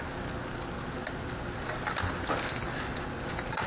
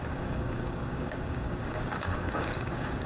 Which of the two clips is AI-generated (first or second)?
second